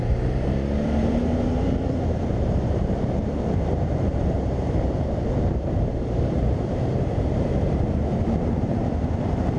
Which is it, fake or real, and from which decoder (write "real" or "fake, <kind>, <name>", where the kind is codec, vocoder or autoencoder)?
fake, vocoder, BigVGAN v2